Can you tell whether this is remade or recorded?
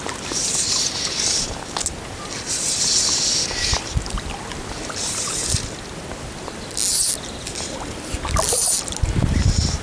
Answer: recorded